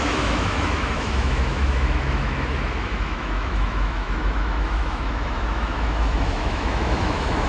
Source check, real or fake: fake